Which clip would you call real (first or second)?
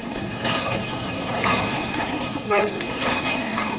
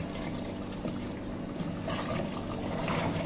second